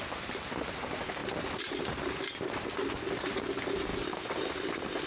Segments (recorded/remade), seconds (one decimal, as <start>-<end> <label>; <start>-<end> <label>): 0.0-5.1 recorded